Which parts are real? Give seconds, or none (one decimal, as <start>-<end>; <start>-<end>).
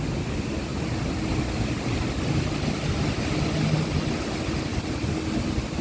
0.0-5.8